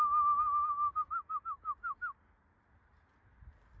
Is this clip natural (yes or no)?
yes